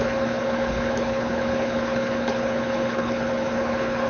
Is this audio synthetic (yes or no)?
yes